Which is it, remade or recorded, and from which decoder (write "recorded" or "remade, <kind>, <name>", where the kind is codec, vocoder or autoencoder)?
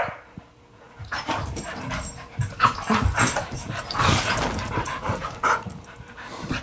remade, vocoder, BigVGAN v2